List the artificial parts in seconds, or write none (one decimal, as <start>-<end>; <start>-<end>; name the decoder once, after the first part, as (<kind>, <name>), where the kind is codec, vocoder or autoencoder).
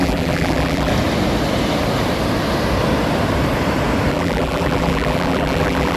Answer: 0.0-0.9 (vocoder, BigVGAN v2); 4.1-6.0